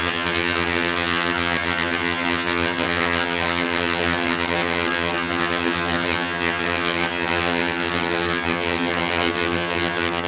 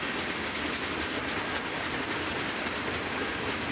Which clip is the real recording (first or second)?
second